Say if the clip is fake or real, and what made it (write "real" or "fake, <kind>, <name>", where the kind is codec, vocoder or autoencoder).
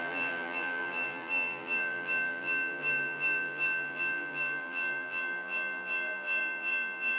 fake, vocoder, BigVGAN v2